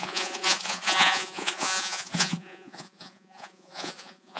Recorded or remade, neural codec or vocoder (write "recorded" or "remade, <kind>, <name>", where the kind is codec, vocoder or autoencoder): remade, vocoder, Vocos